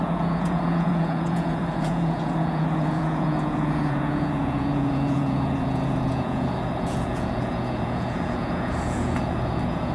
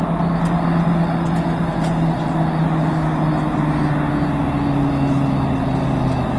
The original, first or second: second